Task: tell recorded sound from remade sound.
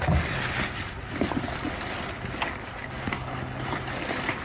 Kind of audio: recorded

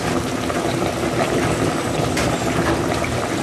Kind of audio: recorded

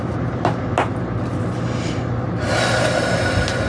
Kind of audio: recorded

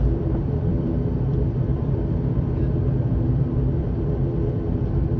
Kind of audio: remade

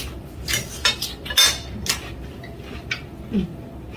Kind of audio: recorded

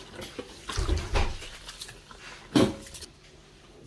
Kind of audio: recorded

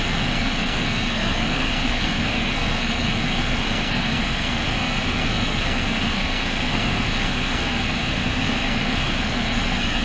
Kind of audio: remade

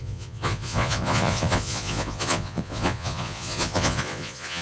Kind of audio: remade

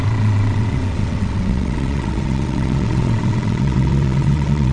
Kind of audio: remade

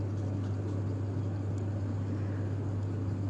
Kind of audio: recorded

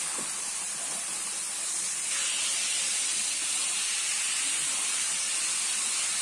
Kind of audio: recorded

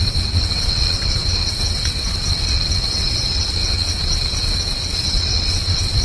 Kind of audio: remade